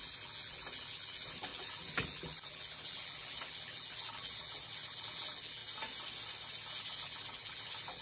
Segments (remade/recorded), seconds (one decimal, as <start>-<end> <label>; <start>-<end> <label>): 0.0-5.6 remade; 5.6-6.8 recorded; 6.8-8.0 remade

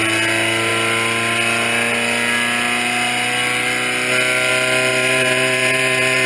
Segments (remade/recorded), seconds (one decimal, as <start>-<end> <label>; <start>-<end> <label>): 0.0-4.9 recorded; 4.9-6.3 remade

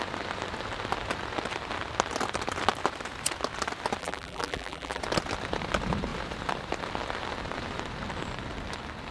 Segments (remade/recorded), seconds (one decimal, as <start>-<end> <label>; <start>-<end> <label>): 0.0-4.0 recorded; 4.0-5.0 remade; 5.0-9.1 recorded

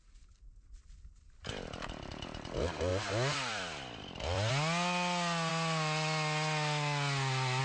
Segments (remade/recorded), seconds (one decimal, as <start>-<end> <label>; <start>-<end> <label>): 0.0-2.9 recorded; 2.9-4.5 remade; 4.5-7.6 recorded

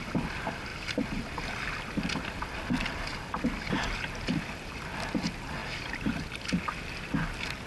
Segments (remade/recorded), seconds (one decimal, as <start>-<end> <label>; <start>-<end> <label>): 0.0-7.7 recorded